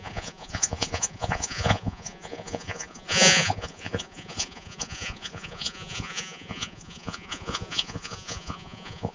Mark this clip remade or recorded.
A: remade